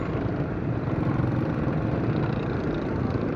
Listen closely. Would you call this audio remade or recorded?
remade